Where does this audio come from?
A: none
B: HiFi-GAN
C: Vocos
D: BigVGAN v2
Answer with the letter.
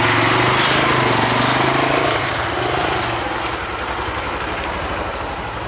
A